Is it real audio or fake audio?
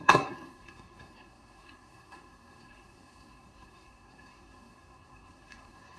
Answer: fake